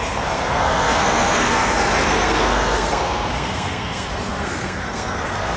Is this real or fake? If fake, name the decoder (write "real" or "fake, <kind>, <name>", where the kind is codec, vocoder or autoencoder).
fake, codec, SNAC